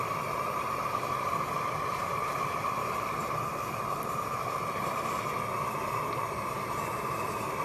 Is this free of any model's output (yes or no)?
no